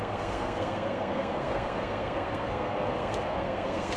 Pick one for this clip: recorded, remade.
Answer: remade